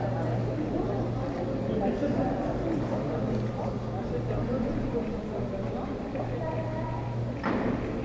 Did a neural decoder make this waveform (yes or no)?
no